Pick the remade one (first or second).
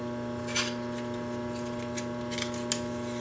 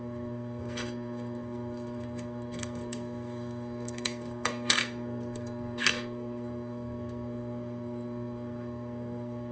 second